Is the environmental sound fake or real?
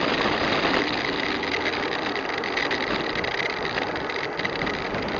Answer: real